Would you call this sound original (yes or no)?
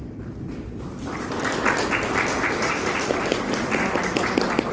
yes